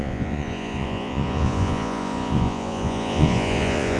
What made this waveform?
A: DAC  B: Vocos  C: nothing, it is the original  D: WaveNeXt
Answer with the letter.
B